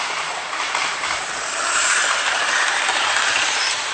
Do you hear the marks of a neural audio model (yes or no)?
yes